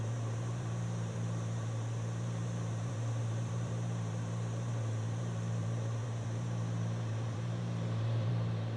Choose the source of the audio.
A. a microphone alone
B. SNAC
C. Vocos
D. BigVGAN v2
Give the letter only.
D